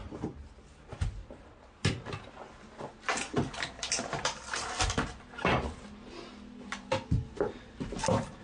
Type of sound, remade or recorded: recorded